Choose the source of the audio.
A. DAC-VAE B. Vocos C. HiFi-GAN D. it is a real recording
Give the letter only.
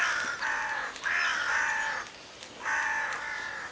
D